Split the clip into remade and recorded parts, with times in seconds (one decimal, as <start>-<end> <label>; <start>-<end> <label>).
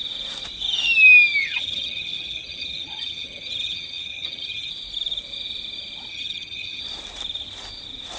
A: 0.0-1.4 recorded; 1.4-4.7 remade; 4.7-6.1 recorded; 6.1-6.8 remade; 6.8-8.2 recorded